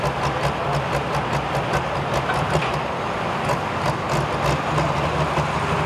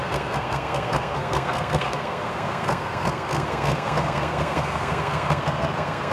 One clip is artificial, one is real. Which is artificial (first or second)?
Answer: second